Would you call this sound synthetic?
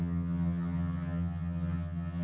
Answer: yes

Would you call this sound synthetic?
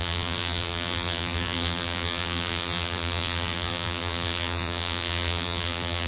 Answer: yes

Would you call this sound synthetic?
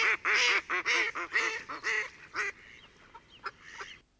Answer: no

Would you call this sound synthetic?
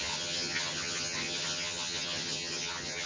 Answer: yes